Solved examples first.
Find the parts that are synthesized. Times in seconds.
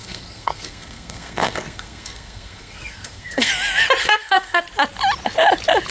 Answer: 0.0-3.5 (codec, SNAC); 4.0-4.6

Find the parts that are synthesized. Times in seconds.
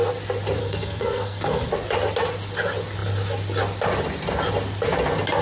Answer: 0.6-1.7 (codec, SNAC)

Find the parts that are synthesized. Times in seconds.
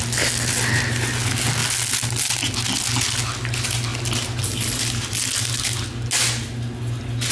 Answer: none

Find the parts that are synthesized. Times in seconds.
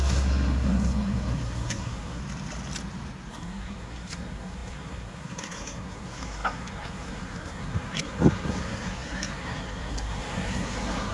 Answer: 0.0-2.2 (codec, SNAC); 3.3-11.1